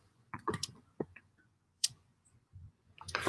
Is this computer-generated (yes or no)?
yes